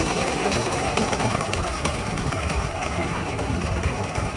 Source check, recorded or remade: remade